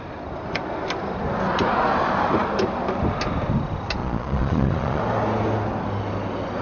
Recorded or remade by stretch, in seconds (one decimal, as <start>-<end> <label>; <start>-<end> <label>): 0.0-4.0 recorded; 4.0-5.0 remade; 5.0-6.6 recorded